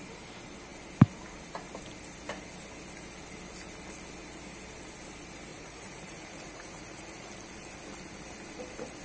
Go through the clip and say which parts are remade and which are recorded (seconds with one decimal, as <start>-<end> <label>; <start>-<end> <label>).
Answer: 0.0-5.5 recorded; 5.5-7.3 remade; 7.3-9.0 recorded